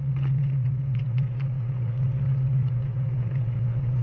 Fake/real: fake